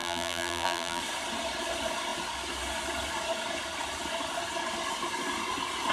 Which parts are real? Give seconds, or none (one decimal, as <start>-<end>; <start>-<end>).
1.0-5.9